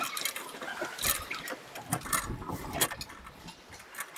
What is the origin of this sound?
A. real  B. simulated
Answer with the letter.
A